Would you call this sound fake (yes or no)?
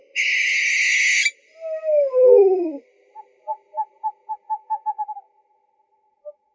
no